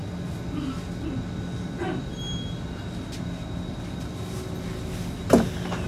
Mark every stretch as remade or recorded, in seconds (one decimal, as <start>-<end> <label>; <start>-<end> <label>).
0.0-5.9 recorded